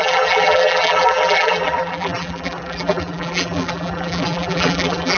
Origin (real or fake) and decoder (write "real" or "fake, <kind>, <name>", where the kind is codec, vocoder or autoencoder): fake, vocoder, BigVGAN v2